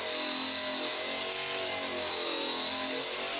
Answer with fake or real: real